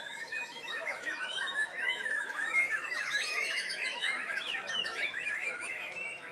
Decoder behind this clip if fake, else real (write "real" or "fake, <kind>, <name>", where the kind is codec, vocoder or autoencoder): fake, autoencoder, DAC-VAE